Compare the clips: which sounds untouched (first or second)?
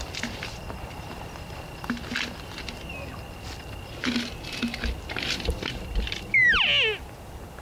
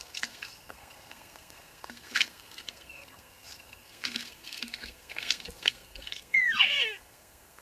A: first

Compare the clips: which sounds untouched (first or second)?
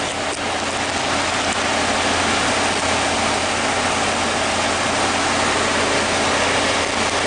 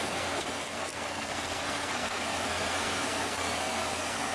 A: first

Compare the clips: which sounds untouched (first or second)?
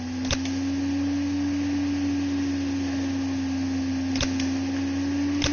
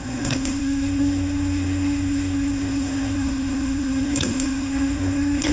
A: first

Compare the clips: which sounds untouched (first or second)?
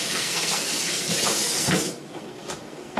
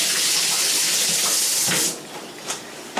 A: second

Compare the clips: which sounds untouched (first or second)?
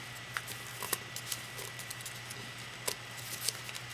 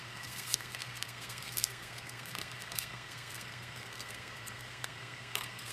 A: first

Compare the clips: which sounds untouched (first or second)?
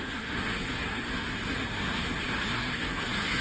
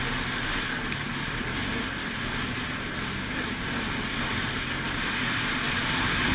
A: second